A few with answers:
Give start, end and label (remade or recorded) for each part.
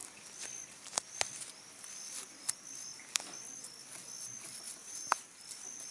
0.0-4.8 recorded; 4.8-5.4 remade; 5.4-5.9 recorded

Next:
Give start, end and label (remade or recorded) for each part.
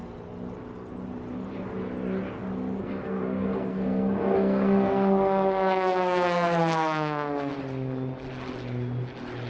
0.0-2.8 recorded; 2.8-7.5 remade; 7.5-9.5 recorded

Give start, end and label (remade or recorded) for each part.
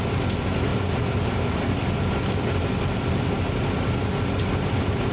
0.0-5.1 recorded